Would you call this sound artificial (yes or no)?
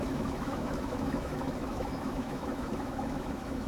yes